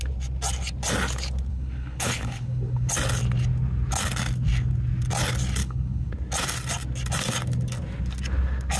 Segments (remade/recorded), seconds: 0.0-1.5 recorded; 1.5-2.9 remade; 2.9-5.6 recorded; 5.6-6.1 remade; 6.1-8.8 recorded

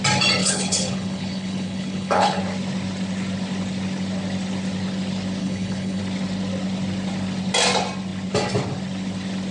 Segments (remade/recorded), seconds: 0.0-0.4 recorded; 0.4-2.4 remade; 2.4-5.4 recorded; 5.4-6.0 remade; 6.0-9.5 recorded

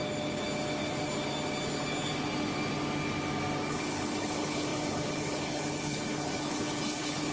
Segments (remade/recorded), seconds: 0.0-3.7 recorded; 3.7-7.3 remade

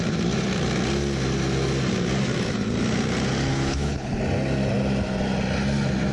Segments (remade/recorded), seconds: 0.0-3.5 recorded; 3.5-4.2 remade; 4.2-6.1 recorded

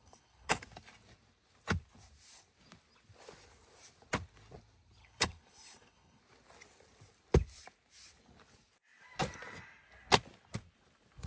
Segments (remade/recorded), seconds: 0.0-0.6 remade; 0.6-5.0 recorded; 5.0-6.2 remade; 6.2-11.3 recorded